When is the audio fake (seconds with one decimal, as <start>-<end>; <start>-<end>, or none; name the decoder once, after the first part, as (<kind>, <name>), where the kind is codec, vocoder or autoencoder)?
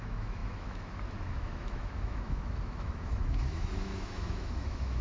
0.0-5.0 (autoencoder, DAC-VAE)